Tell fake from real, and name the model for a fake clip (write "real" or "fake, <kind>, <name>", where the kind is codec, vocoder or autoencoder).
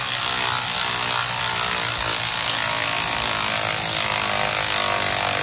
real